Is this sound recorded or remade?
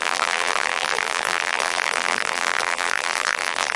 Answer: remade